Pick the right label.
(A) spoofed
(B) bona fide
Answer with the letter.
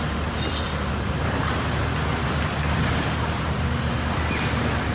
B